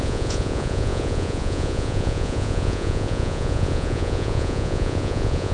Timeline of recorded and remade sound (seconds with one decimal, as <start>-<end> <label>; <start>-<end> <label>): 0.0-5.5 remade